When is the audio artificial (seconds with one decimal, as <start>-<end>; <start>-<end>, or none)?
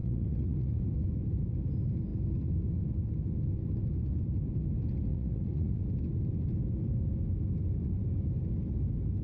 0.0-0.8; 5.1-5.8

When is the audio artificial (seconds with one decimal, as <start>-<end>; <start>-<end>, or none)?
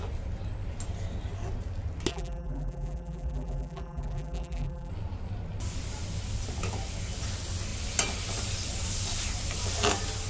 2.1-4.9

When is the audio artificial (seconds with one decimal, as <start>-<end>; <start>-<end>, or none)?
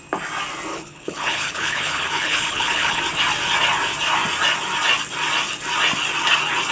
0.7-3.0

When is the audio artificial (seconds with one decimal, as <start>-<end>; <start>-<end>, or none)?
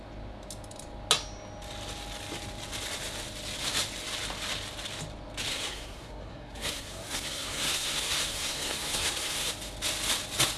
5.5-9.5